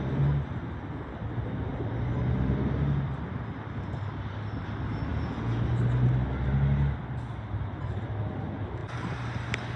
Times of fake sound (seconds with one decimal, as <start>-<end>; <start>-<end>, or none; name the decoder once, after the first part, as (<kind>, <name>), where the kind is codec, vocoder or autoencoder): none

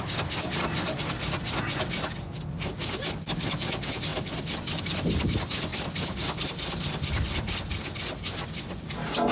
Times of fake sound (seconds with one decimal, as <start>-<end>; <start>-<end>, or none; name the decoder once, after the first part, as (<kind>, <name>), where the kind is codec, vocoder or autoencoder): 4.1-4.8 (vocoder, BigVGAN v2); 5.7-6.4

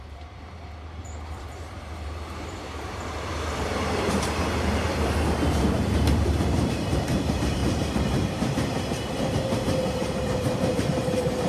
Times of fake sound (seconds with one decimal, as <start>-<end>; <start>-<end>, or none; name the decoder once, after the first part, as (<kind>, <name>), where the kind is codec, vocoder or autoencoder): 0.0-11.5 (vocoder, BigVGAN v2)

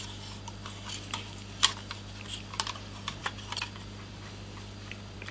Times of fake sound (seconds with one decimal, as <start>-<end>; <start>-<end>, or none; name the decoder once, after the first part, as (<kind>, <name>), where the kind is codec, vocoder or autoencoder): 3.2-5.3 (vocoder, BigVGAN v2)

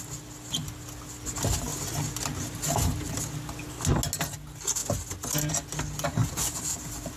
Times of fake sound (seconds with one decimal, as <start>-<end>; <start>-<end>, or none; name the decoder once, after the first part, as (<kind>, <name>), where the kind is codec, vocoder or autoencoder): 6.2-7.2 (vocoder, BigVGAN v2)